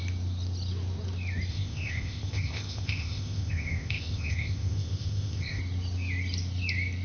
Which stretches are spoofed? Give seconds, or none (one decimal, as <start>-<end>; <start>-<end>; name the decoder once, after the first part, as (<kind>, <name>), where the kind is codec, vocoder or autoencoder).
1.5-5.6 (codec, ZipCodec)